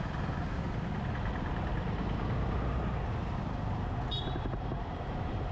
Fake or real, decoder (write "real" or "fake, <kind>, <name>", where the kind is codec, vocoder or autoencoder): real